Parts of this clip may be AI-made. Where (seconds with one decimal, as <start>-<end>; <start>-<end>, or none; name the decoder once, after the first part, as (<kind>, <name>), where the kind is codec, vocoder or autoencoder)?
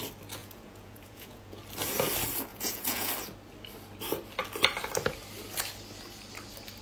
0.4-1.6 (vocoder, Vocos); 2.5-3.1